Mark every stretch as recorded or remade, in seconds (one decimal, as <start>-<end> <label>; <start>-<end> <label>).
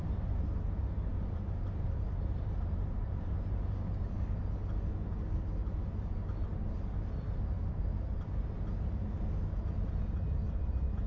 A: 0.0-1.1 recorded; 1.1-4.4 remade; 4.4-11.1 recorded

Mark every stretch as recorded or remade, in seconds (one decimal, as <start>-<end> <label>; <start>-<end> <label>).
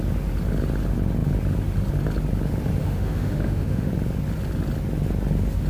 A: 0.0-2.8 recorded; 2.8-3.9 remade; 3.9-5.7 recorded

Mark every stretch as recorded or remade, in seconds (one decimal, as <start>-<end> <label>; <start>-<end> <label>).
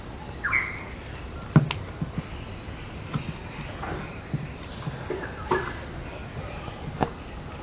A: 0.0-7.6 recorded